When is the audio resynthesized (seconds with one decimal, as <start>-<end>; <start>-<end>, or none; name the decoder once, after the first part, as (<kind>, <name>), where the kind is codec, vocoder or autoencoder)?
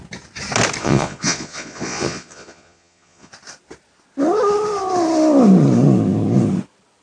0.8-3.3 (vocoder, Vocos)